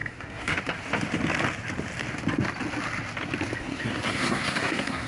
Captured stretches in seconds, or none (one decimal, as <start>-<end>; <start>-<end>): 0.6-3.6